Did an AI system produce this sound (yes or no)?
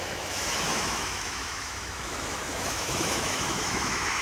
yes